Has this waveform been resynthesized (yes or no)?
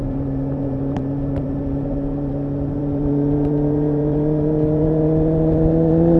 yes